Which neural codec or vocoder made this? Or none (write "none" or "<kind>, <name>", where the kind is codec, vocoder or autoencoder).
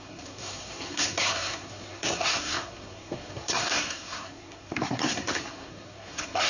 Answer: codec, SNAC